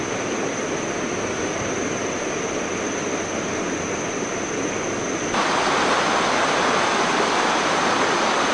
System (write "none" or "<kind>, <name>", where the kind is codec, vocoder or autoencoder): none